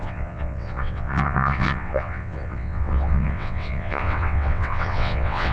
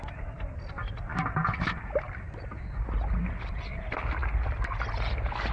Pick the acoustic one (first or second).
second